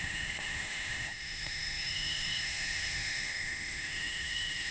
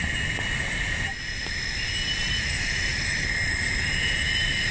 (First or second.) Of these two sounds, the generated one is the first